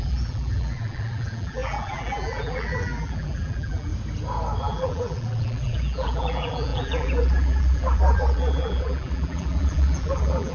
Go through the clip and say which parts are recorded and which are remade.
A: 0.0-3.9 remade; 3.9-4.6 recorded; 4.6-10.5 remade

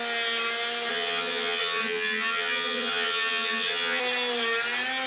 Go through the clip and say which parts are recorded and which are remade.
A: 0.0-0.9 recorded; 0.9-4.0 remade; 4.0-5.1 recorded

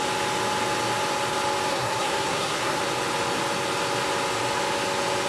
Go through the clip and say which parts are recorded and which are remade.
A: 0.0-1.7 recorded; 1.7-2.8 remade; 2.8-5.3 recorded